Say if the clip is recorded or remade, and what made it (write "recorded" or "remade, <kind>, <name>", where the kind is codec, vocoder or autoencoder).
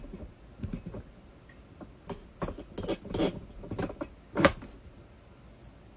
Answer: recorded